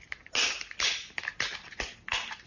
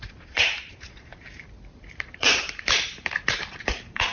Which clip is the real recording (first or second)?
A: first